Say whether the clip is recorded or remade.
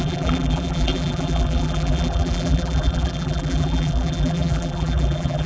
remade